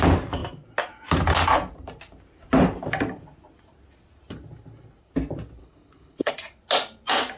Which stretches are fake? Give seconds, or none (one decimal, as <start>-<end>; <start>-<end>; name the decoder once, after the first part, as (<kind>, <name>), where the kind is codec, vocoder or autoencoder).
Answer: 5.6-6.3 (codec, HILCodec)